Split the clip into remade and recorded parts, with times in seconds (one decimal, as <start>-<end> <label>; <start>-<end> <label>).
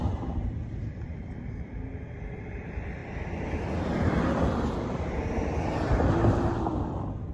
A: 0.0-7.3 remade